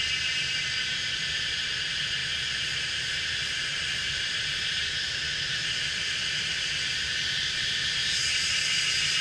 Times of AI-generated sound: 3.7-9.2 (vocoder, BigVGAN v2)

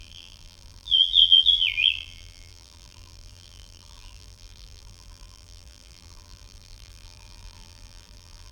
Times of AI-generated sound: 0.0-8.5 (vocoder, BigVGAN v2)

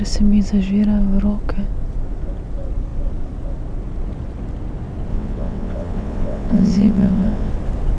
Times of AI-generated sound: 5.1-7.5 (vocoder, WaveNeXt)

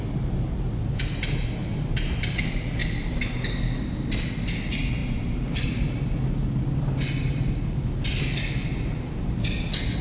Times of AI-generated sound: 1.7-2.3 (vocoder, BigVGAN v2); 5.0-5.9

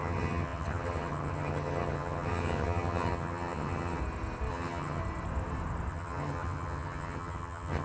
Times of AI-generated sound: 0.0-4.0 (vocoder, HiFi-GAN); 4.5-5.0; 5.9-7.8

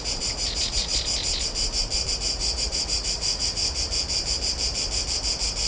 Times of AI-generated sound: 0.0-0.9 (vocoder, Vocos); 2.2-3.6

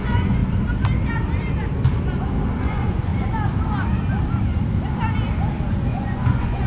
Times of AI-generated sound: 0.0-0.4 (vocoder, Vocos); 2.6-3.1; 5.9-6.7

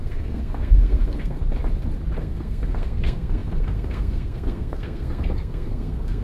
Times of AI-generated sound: 0.0-1.4 (codec, SNAC); 2.2-6.2